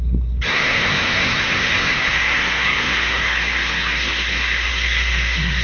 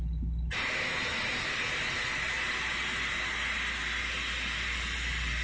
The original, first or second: second